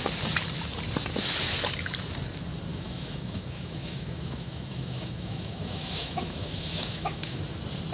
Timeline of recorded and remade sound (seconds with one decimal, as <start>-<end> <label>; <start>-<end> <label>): 0.0-2.7 recorded; 2.7-7.4 remade; 7.4-7.9 recorded